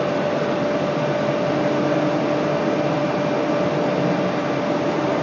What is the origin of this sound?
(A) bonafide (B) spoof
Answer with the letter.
A